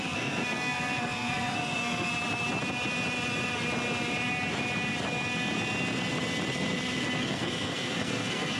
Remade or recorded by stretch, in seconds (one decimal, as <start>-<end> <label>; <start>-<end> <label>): 0.0-2.1 remade; 2.1-7.2 recorded; 7.2-8.6 remade